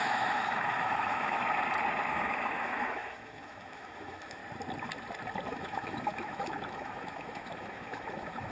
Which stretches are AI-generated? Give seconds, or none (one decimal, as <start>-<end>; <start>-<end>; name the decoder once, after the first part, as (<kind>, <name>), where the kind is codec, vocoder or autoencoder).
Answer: 0.0-1.4 (autoencoder, DAC-VAE); 2.1-4.4; 5.5-8.5

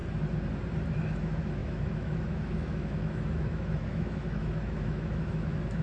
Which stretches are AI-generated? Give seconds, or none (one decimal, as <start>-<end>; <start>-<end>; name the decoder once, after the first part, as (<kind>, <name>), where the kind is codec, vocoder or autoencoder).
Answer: 1.1-5.8 (autoencoder, DAC-VAE)

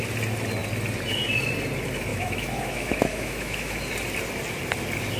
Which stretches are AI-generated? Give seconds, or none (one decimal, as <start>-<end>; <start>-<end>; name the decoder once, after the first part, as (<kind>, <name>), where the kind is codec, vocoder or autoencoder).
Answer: 2.1-3.9 (autoencoder, DAC-VAE)

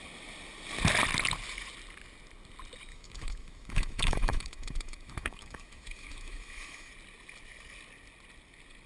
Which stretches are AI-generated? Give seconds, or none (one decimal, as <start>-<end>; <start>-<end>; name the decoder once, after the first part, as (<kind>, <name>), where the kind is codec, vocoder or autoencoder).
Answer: 2.9-6.9 (autoencoder, DAC-VAE)

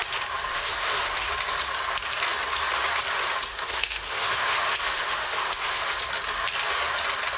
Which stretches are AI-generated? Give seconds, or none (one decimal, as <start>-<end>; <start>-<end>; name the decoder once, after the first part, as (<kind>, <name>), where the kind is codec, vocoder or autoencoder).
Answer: 0.5-1.3 (autoencoder, DAC-VAE); 3.5-6.0

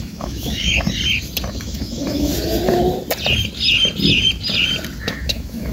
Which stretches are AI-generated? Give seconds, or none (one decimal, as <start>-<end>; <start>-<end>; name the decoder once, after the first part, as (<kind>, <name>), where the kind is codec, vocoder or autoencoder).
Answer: 0.0-0.7 (autoencoder, DAC-VAE); 1.5-2.3; 5.0-5.7

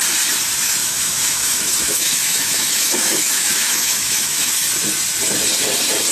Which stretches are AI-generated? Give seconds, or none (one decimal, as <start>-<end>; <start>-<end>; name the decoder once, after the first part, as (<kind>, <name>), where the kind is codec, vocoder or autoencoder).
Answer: 0.8-4.5 (autoencoder, DAC-VAE)

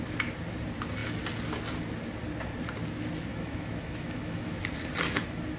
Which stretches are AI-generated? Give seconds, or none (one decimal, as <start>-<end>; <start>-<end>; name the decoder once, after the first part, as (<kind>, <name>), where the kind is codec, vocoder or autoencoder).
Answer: 3.3-4.6 (autoencoder, DAC-VAE)